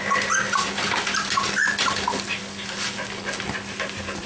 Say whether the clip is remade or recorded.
recorded